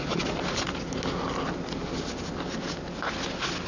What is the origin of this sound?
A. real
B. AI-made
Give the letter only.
A